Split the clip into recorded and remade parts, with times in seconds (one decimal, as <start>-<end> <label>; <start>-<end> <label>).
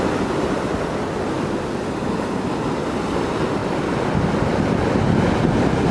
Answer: 0.0-3.6 remade; 3.6-4.3 recorded; 4.3-5.9 remade